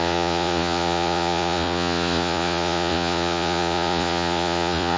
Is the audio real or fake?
fake